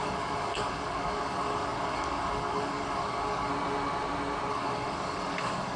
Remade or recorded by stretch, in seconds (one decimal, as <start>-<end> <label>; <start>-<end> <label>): 0.0-3.5 remade; 3.5-4.5 recorded; 4.5-5.8 remade